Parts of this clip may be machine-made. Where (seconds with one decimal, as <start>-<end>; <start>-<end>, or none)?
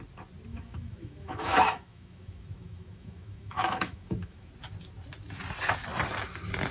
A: 0.5-4.5